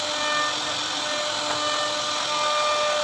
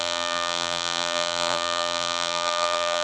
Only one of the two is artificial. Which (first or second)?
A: second